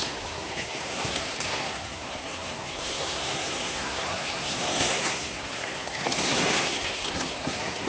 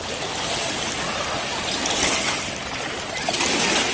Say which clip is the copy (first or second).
first